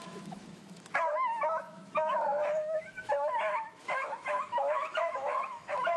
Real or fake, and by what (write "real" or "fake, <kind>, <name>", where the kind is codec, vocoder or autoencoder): fake, autoencoder, DAC-VAE